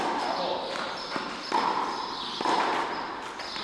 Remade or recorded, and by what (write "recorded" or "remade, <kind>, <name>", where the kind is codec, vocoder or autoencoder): recorded